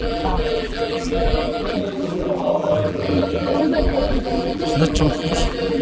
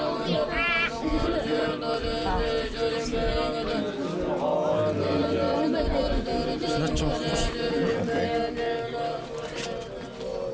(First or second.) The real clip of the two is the second